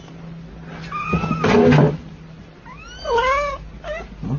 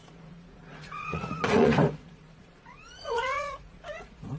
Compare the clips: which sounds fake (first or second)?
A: second